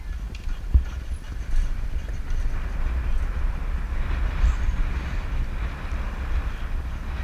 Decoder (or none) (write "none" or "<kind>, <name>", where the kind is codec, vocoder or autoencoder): none